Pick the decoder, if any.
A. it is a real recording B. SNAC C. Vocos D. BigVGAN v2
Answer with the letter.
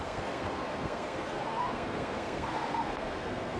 B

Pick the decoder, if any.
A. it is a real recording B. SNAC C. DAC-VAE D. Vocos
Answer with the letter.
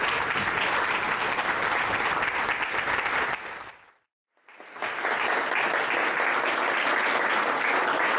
A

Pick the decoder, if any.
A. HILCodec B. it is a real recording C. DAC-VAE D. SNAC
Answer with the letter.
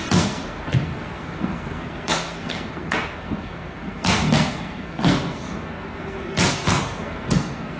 D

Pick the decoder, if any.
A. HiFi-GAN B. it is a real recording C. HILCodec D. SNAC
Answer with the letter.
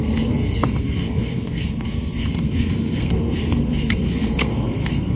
D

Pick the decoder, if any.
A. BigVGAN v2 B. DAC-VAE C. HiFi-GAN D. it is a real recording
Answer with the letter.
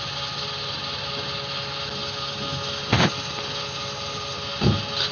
D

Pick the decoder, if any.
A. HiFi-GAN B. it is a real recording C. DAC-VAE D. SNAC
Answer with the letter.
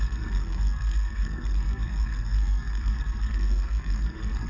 D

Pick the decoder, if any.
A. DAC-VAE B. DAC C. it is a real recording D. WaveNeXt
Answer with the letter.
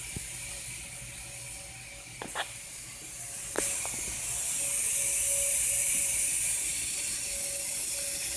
C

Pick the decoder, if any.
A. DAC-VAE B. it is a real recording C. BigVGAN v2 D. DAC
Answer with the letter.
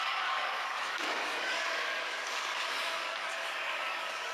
D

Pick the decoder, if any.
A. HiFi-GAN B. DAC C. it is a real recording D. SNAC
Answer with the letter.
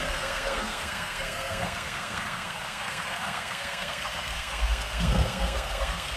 D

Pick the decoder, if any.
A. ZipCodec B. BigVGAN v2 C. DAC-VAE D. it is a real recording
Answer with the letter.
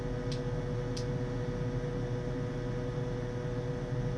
D